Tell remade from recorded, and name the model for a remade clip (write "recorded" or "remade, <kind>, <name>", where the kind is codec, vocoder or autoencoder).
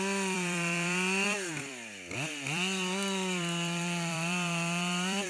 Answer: remade, vocoder, BigVGAN v2